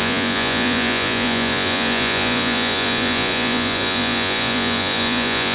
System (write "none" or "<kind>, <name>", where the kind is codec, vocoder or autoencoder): vocoder, Vocos